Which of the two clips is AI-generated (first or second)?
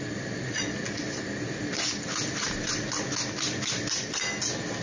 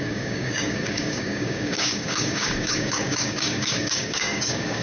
second